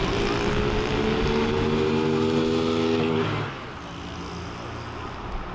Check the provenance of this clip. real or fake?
real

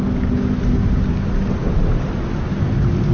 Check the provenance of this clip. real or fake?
real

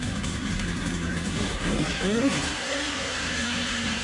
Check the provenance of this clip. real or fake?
fake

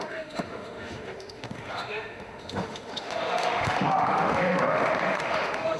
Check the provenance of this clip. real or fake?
fake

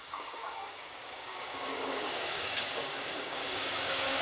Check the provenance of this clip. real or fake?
fake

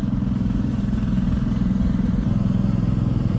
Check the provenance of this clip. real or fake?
fake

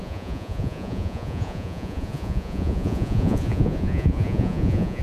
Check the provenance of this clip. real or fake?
fake